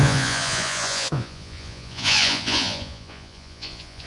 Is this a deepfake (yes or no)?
yes